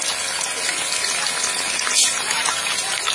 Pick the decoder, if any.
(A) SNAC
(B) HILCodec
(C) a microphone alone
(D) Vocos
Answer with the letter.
C